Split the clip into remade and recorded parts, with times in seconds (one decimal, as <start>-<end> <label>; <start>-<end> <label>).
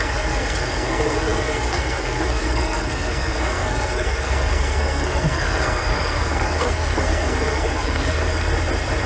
0.0-8.3 remade; 8.3-9.1 recorded